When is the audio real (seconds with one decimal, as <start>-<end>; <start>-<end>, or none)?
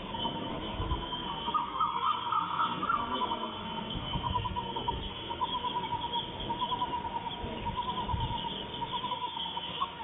5.5-9.1